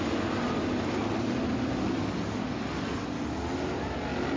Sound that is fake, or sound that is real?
real